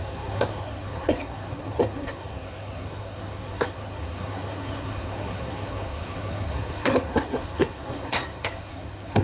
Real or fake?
fake